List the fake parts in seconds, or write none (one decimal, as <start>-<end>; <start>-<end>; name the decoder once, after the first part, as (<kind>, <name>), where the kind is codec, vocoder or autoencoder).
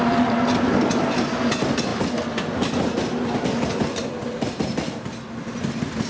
none